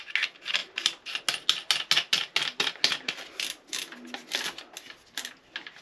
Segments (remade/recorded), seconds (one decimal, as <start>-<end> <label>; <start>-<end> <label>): 0.0-5.8 recorded